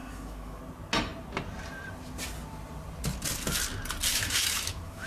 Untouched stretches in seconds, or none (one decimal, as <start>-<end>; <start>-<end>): 0.6-4.1